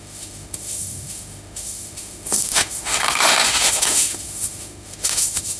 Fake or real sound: fake